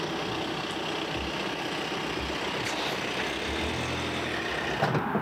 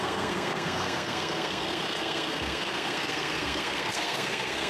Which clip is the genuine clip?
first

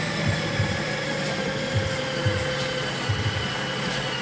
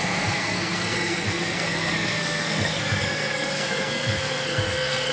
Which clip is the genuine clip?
first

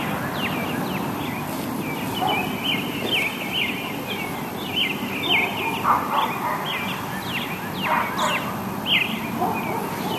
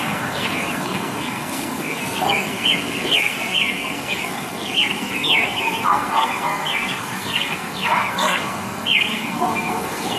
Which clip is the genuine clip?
first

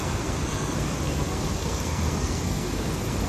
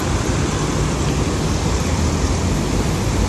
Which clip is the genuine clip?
second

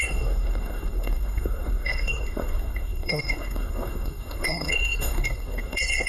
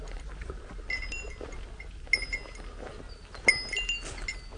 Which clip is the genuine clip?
second